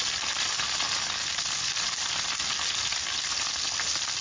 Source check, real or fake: real